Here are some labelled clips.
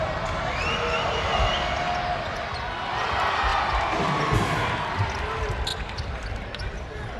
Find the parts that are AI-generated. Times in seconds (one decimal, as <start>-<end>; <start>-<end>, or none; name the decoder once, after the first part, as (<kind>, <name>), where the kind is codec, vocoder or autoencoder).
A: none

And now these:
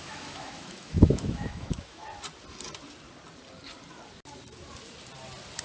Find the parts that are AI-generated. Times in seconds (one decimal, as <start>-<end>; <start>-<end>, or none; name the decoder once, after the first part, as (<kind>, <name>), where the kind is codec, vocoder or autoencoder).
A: 0.0-2.0 (autoencoder, DAC-VAE)

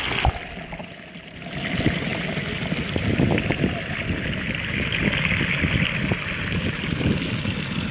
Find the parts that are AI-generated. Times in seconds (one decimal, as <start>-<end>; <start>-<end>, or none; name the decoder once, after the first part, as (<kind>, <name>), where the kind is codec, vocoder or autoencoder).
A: none

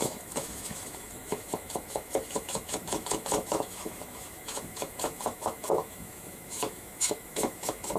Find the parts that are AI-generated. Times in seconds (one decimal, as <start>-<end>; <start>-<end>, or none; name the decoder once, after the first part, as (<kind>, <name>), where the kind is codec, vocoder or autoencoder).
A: 0.0-8.0 (autoencoder, DAC-VAE)

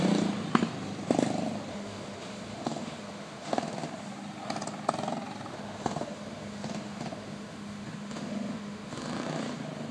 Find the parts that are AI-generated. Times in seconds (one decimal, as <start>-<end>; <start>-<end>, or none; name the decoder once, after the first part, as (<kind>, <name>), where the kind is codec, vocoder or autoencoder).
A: 1.7-3.9 (autoencoder, DAC-VAE); 5.5-9.4

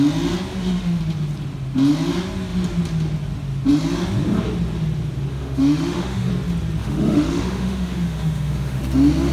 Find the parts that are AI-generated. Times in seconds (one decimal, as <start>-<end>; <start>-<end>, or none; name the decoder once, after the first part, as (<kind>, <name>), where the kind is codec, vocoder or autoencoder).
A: 0.5-1.0 (autoencoder, DAC-VAE); 5.3-6.3; 6.8-8.8

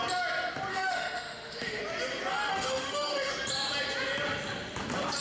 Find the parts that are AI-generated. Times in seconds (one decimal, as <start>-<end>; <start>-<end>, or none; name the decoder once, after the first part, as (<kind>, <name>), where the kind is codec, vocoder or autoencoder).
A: 0.7-1.8 (autoencoder, DAC-VAE); 2.3-3.3